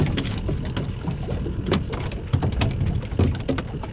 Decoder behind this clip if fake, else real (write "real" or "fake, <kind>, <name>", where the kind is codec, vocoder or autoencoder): real